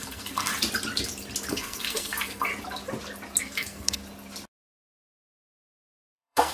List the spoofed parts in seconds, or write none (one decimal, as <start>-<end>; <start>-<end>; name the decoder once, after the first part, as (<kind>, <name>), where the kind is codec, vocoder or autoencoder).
0.0-0.5 (codec, SNAC); 1.5-2.5; 3.4-4.0; 5.6-6.5